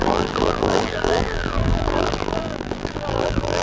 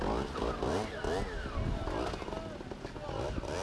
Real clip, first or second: second